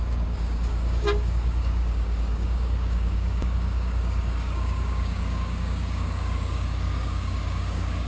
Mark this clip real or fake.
fake